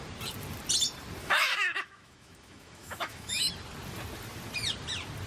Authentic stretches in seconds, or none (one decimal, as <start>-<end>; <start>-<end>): 0.0-1.2; 3.5-5.3